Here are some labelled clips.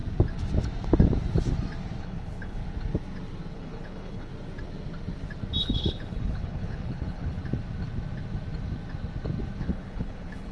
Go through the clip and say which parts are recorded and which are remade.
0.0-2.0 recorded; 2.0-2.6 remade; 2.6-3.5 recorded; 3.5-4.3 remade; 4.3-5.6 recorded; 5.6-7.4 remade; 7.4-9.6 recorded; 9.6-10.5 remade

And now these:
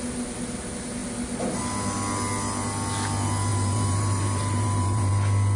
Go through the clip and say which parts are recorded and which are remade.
0.0-3.5 recorded; 3.5-5.1 remade; 5.1-5.6 recorded

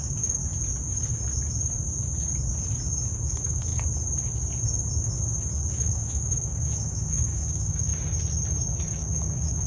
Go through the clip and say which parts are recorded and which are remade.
0.0-0.4 remade; 0.4-3.2 recorded; 3.2-3.7 remade; 3.7-5.7 recorded; 5.7-7.9 remade; 7.9-8.9 recorded; 8.9-9.7 remade

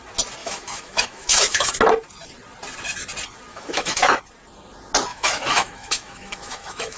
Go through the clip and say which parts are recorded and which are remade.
0.0-0.4 recorded; 0.4-1.7 remade; 1.7-3.5 recorded; 3.5-4.2 remade; 4.2-5.1 recorded; 5.1-7.0 remade